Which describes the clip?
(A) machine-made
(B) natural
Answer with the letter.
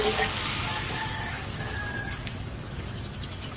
A